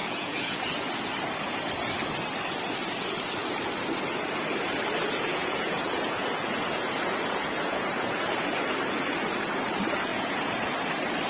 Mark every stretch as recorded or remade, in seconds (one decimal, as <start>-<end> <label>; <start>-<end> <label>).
0.0-0.6 remade; 0.6-5.3 recorded; 5.3-8.4 remade; 8.4-10.1 recorded; 10.1-10.7 remade; 10.7-11.3 recorded